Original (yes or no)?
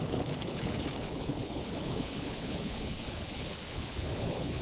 no